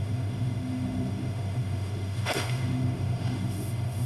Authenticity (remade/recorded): remade